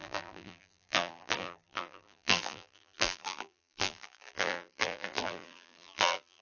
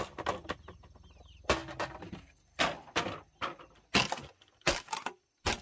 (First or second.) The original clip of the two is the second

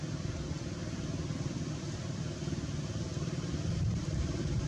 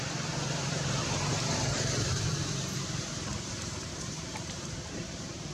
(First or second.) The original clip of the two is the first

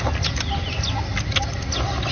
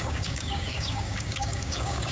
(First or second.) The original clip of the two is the first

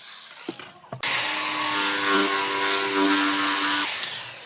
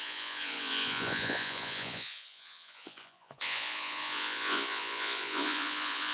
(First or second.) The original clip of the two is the first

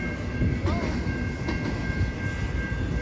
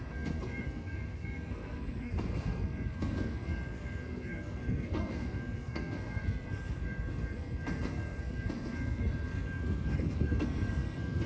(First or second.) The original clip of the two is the first